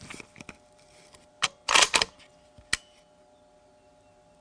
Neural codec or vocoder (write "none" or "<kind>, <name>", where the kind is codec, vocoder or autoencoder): none